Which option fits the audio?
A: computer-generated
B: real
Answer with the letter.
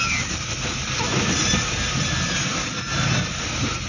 B